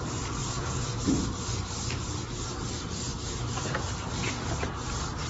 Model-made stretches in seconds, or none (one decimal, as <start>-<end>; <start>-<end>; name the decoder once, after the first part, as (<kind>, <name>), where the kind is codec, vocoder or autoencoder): 0.4-1.0 (vocoder, Vocos)

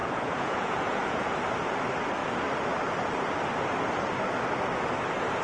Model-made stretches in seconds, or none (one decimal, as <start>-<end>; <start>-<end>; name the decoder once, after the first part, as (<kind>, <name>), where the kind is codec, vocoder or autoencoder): 0.0-1.3 (vocoder, Vocos)

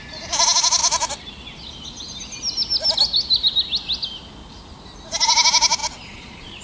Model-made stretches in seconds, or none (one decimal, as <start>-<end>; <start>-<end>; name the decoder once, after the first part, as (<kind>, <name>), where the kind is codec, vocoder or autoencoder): 5.8-6.6 (vocoder, Vocos)

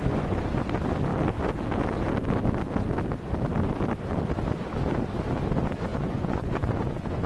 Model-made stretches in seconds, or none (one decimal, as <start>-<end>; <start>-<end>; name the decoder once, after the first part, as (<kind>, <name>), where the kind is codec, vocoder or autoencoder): 0.0-0.5 (vocoder, Vocos); 5.9-7.3

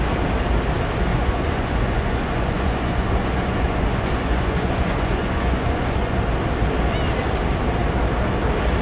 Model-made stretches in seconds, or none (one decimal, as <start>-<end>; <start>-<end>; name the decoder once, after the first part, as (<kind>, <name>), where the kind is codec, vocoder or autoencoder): 1.1-6.2 (vocoder, Vocos)

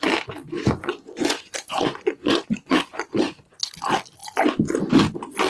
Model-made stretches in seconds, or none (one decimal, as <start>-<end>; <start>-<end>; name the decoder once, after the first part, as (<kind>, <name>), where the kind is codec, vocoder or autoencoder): 0.4-3.7 (vocoder, Vocos)